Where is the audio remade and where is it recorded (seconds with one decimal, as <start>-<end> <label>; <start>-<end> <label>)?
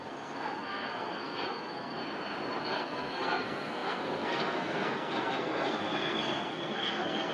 0.0-2.0 remade; 2.0-2.6 recorded; 2.6-7.3 remade